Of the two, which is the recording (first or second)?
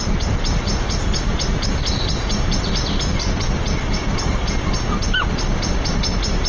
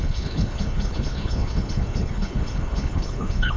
first